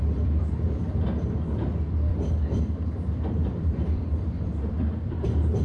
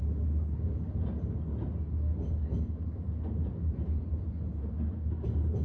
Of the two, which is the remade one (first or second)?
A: first